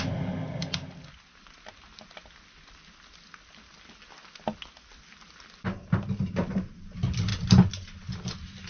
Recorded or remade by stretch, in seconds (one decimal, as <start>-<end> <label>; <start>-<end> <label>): 0.0-8.7 recorded